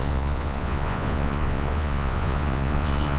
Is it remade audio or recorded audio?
remade